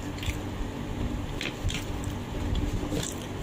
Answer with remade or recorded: recorded